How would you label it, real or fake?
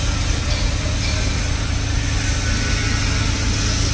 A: real